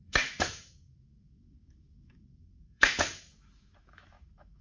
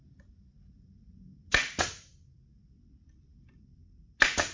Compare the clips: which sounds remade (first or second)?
first